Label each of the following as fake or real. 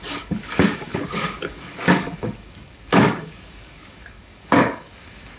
fake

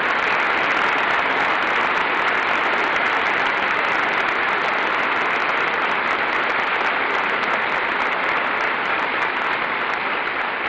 real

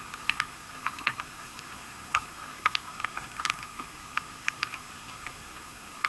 fake